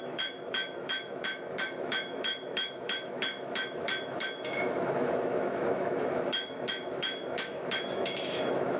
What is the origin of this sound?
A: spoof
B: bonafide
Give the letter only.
A